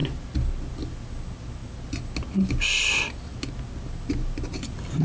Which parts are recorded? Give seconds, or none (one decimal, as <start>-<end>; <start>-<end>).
0.0-5.0